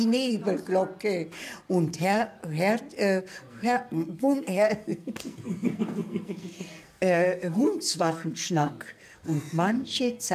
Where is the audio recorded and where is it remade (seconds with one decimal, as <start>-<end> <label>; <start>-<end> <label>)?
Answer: 0.0-0.4 remade; 0.4-1.9 recorded; 1.9-2.4 remade; 2.4-3.2 recorded; 3.2-10.3 remade